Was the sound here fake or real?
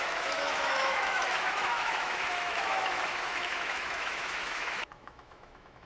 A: fake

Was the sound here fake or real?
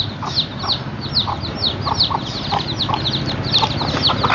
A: real